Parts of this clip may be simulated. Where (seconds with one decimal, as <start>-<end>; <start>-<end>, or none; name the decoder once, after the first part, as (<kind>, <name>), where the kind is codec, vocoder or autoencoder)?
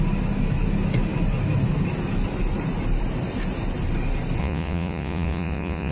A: 4.4-5.9 (vocoder, Vocos)